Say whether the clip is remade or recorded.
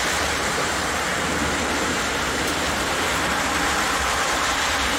remade